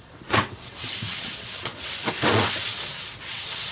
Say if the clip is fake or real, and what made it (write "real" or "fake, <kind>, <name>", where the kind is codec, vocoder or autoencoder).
fake, vocoder, WaveNeXt